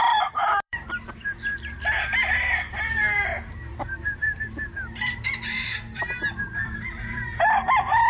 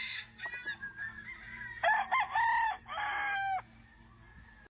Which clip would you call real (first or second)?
second